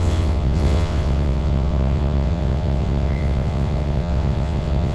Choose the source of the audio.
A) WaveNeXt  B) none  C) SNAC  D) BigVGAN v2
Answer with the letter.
A